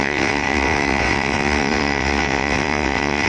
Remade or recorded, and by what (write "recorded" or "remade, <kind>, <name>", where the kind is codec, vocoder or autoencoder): remade, vocoder, WaveNeXt